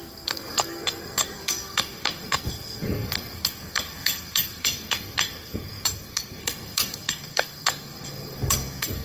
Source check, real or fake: fake